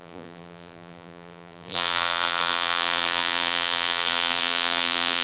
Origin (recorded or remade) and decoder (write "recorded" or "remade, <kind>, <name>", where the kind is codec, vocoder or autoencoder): remade, vocoder, BigVGAN v2